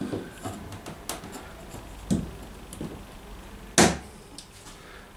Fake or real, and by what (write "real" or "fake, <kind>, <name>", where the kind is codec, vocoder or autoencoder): real